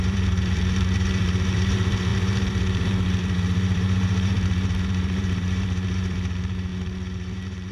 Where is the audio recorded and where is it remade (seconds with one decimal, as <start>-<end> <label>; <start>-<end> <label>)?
0.0-7.7 remade